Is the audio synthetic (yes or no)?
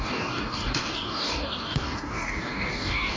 yes